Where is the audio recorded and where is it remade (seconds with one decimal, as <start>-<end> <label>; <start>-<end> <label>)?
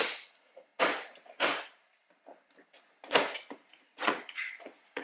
0.0-0.7 remade; 0.7-3.7 recorded; 3.7-5.0 remade